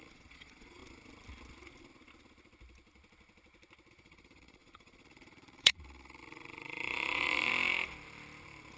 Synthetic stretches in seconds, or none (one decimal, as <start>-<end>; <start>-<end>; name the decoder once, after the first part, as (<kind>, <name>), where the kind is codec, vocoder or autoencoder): 0.0-0.8 (vocoder, Vocos); 3.9-7.5